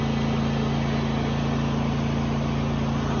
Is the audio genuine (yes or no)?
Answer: yes